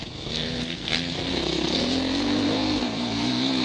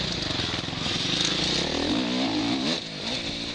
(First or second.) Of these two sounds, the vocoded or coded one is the first